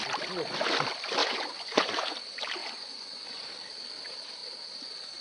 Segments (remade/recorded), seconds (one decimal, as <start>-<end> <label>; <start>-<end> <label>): 0.0-1.2 recorded; 1.2-2.1 remade; 2.1-2.6 recorded; 2.6-3.5 remade; 3.5-5.2 recorded